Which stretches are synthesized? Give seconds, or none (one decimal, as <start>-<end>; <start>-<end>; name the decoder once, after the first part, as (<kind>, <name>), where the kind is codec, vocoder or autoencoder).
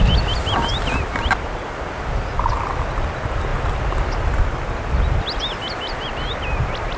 none